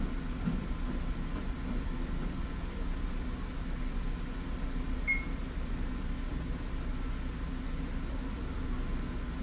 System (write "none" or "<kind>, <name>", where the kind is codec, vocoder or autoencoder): none